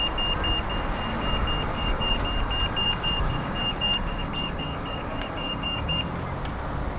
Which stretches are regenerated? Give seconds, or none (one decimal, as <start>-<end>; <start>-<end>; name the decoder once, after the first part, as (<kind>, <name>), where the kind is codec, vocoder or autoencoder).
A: 1.7-2.2 (codec, DAC); 2.8-6.0